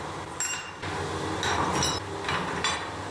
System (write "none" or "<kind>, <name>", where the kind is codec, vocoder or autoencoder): none